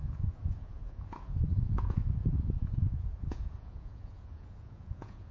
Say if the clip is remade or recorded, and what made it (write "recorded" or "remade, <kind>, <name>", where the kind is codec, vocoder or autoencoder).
remade, vocoder, Vocos